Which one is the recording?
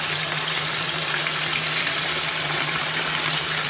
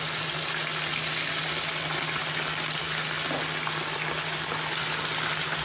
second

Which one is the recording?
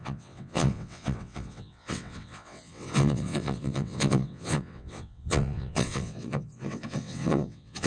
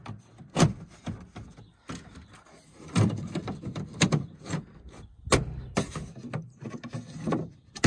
second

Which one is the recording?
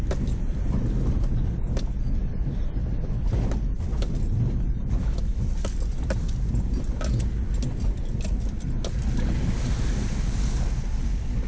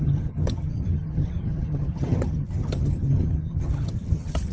first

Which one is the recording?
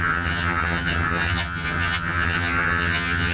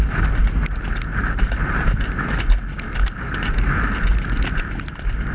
second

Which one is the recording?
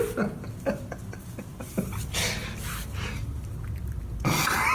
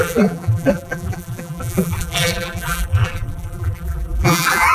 first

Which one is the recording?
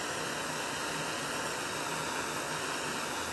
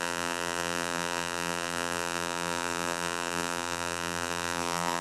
first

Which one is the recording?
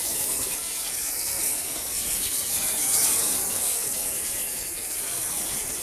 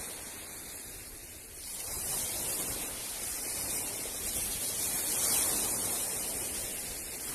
second